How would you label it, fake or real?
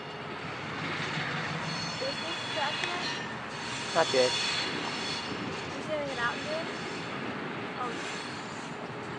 real